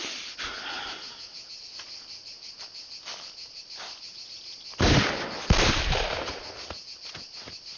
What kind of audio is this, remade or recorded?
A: recorded